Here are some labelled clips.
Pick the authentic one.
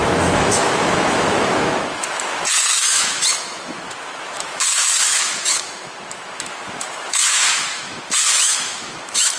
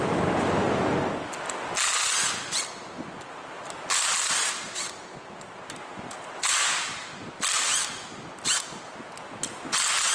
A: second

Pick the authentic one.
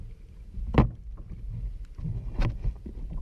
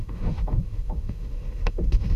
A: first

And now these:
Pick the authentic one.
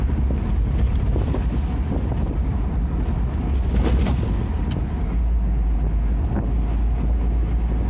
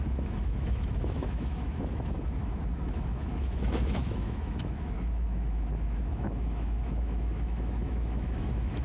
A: first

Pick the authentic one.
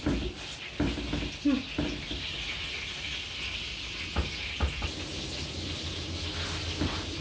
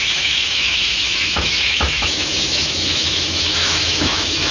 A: first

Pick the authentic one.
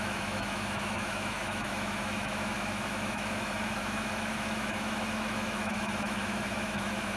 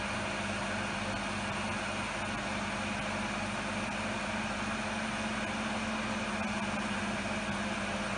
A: second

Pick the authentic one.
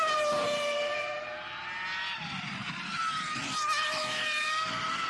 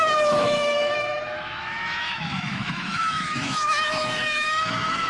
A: first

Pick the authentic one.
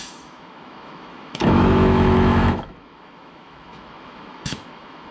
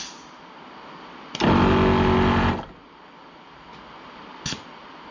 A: second